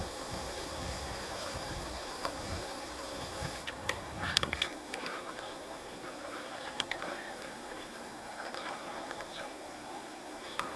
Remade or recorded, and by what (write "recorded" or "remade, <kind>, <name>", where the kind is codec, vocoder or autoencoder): remade, codec, SNAC